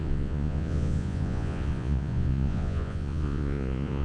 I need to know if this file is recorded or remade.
remade